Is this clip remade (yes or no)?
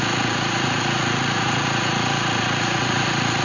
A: yes